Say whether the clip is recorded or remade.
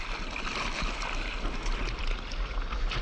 recorded